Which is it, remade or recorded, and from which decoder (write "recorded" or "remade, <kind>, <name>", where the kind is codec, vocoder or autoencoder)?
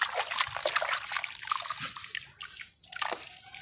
recorded